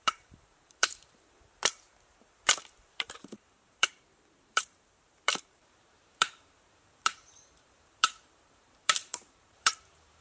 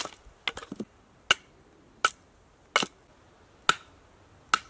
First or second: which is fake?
first